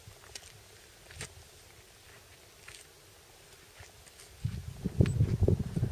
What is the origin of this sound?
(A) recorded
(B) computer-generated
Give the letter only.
A